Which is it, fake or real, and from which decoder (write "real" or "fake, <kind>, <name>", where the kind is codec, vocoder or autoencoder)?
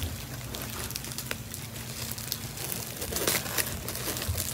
real